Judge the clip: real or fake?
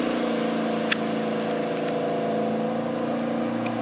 real